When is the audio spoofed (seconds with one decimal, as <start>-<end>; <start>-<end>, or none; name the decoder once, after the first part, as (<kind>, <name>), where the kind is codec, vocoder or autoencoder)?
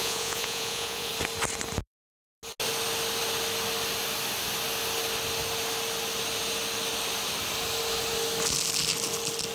0.0-1.1 (vocoder, Vocos)